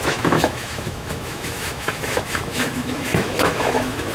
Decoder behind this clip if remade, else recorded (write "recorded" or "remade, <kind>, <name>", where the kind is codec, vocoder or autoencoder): remade, autoencoder, DAC-VAE